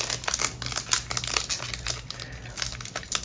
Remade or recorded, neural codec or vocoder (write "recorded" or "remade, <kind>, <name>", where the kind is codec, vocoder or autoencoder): recorded